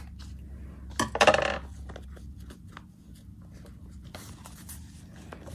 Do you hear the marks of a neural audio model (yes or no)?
no